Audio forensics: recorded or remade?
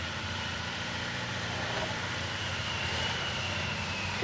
remade